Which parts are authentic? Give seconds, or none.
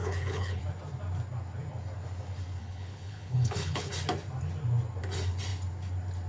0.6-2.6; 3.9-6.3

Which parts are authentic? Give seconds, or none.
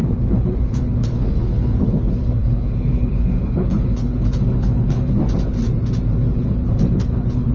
5.2-6.4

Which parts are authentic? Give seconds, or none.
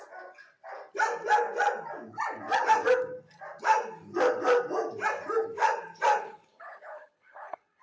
0.0-6.2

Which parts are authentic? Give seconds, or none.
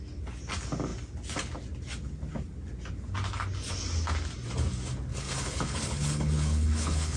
0.0-5.1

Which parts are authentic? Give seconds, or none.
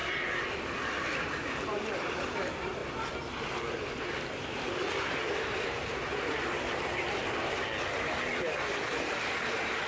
0.0-9.9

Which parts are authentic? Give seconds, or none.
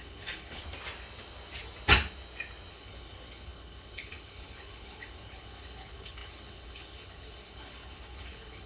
0.6-2.7